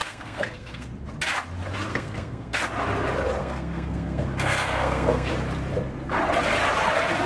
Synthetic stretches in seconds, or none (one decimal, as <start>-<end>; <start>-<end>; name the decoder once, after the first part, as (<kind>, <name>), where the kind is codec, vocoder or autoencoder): 0.0-0.9 (codec, SNAC); 1.9-2.6; 3.4-5.3